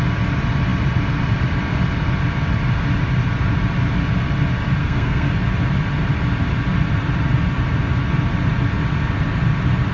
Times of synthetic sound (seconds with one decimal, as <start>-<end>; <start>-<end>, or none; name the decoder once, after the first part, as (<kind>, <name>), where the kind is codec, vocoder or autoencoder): 4.8-5.3 (codec, SNAC)